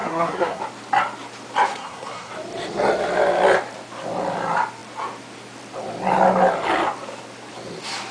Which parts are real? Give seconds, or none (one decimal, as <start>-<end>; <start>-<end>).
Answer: 0.6-1.7; 2.3-8.1